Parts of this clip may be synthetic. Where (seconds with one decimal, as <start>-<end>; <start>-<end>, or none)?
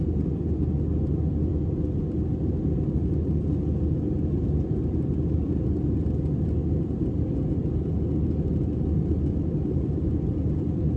none